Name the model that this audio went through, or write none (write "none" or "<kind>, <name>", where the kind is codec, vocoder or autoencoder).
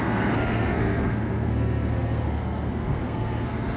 codec, SNAC